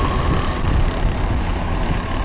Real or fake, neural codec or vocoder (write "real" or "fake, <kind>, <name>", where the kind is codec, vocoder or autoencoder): real